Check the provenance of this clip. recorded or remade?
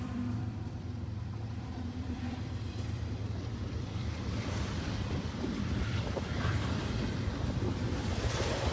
remade